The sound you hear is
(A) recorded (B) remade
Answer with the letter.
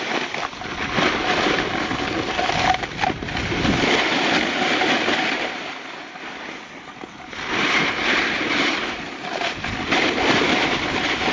A